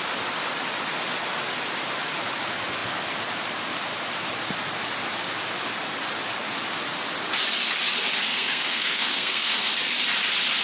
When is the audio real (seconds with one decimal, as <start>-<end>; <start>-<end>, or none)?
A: 0.0-8.3; 9.7-10.6